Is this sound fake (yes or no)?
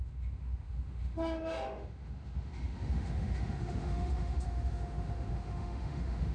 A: yes